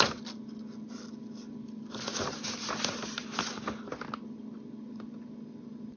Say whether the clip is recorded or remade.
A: recorded